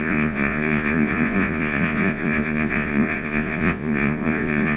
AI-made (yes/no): yes